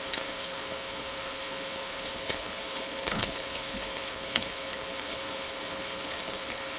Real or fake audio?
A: fake